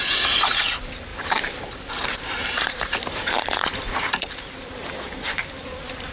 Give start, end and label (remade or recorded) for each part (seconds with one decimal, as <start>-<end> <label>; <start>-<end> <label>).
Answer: 0.0-1.1 recorded; 1.1-4.3 remade; 4.3-4.8 recorded; 4.8-5.4 remade; 5.4-6.1 recorded